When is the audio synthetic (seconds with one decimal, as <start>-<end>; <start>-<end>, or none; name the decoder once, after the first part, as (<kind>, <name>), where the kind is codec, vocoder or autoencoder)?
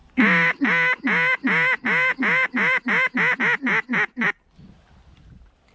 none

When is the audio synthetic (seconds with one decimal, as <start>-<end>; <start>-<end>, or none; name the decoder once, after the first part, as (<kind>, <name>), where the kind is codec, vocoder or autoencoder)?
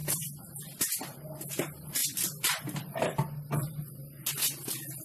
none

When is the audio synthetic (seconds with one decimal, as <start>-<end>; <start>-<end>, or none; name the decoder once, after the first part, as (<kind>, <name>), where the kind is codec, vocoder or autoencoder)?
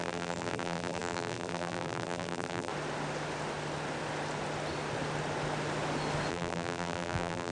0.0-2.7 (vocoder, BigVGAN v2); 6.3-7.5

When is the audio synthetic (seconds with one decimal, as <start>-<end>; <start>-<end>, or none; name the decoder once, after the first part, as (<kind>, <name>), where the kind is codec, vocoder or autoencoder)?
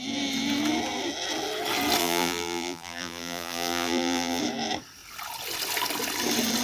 2.0-4.4 (vocoder, BigVGAN v2)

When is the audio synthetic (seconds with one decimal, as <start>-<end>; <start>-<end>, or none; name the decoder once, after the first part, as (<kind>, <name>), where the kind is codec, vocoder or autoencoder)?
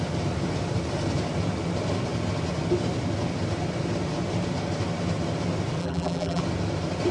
5.8-6.4 (vocoder, BigVGAN v2)